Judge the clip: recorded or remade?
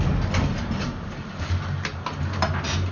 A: recorded